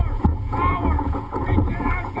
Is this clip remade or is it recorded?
remade